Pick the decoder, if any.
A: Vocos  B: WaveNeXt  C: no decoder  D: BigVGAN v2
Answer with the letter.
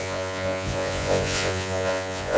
A